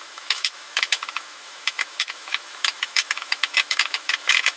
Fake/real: fake